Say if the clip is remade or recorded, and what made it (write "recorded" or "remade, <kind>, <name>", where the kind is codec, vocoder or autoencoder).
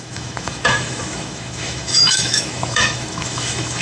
remade, autoencoder, DAC-VAE